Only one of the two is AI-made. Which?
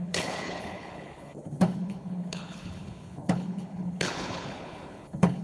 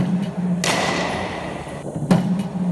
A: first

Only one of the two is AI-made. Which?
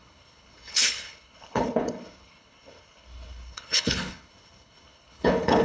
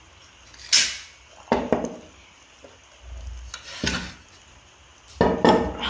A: first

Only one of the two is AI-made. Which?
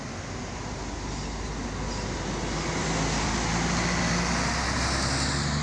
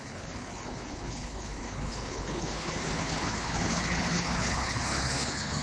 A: second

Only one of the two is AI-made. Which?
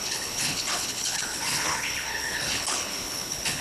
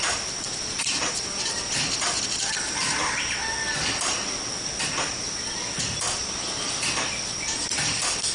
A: first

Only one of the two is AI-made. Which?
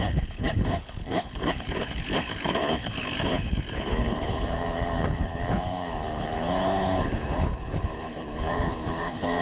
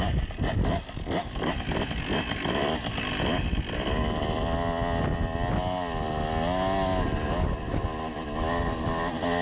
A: first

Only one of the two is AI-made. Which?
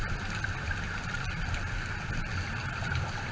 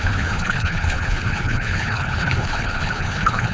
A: second